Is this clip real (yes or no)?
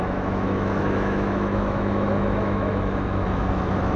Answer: no